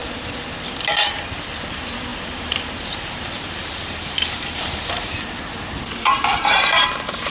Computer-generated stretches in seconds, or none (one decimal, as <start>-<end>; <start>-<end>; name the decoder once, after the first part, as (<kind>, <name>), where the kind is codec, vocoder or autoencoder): 1.7-7.3 (vocoder, BigVGAN v2)